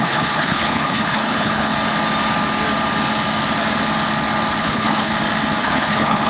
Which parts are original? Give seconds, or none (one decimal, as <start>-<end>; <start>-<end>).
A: 1.7-4.6; 5.1-5.6